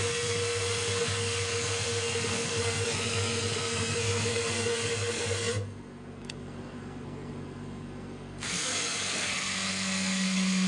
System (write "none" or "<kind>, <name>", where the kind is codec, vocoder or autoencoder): codec, SNAC